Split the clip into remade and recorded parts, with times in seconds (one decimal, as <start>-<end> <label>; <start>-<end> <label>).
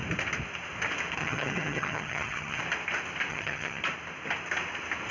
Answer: 0.0-1.2 recorded; 1.2-2.6 remade; 2.6-3.3 recorded; 3.3-3.8 remade; 3.8-5.1 recorded